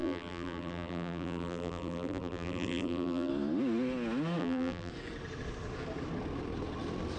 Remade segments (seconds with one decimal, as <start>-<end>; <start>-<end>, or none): 0.0-3.3; 4.4-4.9